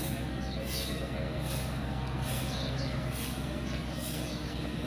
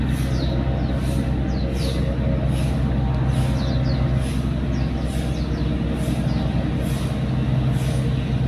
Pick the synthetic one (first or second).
first